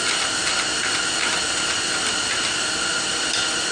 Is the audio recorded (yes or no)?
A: yes